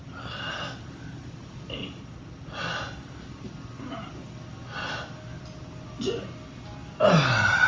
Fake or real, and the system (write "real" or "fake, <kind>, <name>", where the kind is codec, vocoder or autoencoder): real